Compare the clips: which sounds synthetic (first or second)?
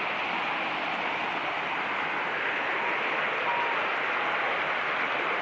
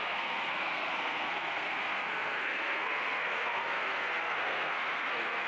second